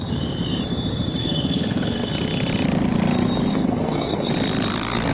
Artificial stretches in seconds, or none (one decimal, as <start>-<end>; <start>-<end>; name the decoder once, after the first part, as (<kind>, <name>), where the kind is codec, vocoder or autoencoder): 1.2-2.1 (codec, SNAC); 3.5-4.3